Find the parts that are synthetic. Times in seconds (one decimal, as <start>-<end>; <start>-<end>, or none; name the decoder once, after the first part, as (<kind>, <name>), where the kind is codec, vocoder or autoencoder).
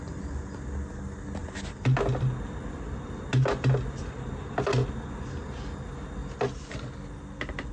none